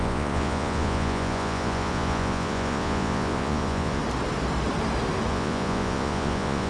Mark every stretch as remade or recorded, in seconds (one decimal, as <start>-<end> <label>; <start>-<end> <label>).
0.0-4.0 remade; 4.0-5.3 recorded; 5.3-6.7 remade